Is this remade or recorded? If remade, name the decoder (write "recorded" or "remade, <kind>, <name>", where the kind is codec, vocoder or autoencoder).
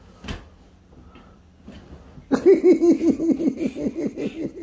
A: recorded